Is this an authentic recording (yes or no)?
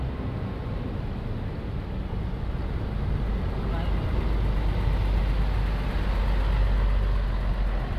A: yes